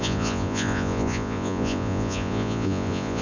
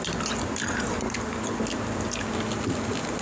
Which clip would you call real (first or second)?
second